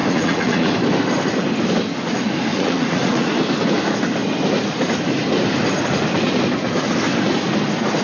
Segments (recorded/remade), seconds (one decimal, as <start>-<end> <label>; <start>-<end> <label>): 0.0-0.7 remade; 0.7-2.5 recorded; 2.5-3.3 remade; 3.3-8.0 recorded